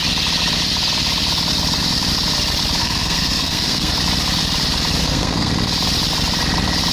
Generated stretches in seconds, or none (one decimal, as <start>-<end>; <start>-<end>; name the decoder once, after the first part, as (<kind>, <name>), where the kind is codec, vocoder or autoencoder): 2.8-3.9 (codec, SNAC); 5.0-5.5